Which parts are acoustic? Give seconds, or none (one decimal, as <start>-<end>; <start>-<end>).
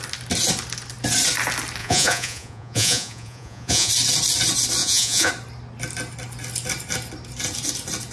0.0-1.8; 3.9-4.8; 5.3-8.1